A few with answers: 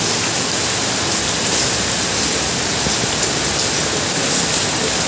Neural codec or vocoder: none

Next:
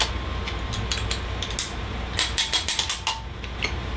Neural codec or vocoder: none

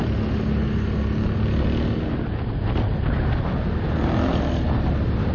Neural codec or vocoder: none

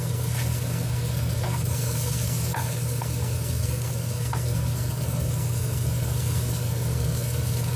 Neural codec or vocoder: codec, SNAC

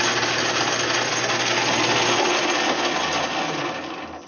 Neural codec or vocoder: none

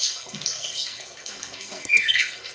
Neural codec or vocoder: codec, SNAC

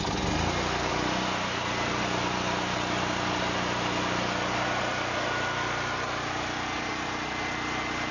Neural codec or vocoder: none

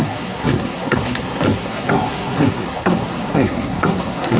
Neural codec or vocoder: codec, SNAC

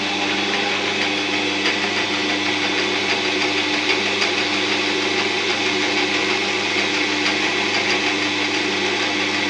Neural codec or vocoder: none